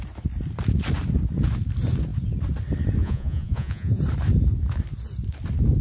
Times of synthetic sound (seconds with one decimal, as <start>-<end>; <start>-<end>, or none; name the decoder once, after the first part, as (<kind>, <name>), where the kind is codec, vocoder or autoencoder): 3.0-4.0 (vocoder, Vocos)